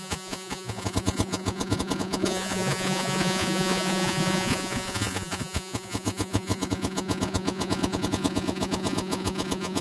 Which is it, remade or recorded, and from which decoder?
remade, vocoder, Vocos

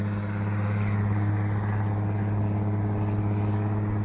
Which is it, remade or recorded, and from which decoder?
recorded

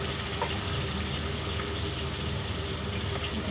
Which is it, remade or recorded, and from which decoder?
recorded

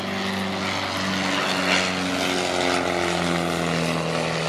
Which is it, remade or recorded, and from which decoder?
recorded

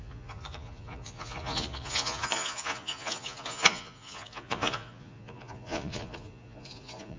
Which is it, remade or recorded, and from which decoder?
remade, vocoder, Vocos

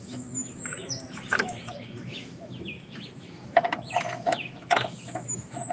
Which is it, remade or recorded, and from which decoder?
remade, autoencoder, DAC-VAE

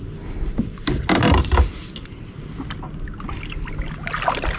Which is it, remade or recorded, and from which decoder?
recorded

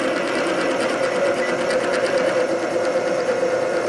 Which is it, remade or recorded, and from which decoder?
recorded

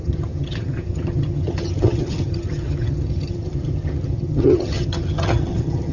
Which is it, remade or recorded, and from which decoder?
remade, vocoder, HiFi-GAN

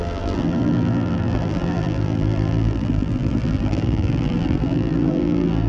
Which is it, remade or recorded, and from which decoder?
remade, vocoder, BigVGAN v2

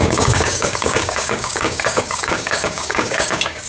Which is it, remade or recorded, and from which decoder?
remade, codec, DAC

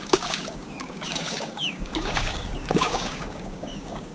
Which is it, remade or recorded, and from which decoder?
remade, codec, DAC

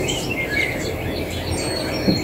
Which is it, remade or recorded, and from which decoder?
recorded